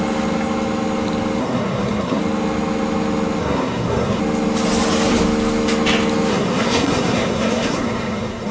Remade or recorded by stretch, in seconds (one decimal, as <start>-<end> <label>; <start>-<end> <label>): 0.0-1.4 recorded; 1.4-2.2 remade; 2.2-3.4 recorded; 3.4-4.2 remade; 4.2-6.3 recorded; 6.3-8.5 remade